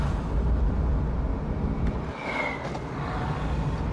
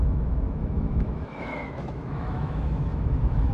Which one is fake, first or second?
second